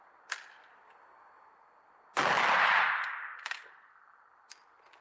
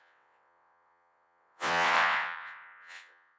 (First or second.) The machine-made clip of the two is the second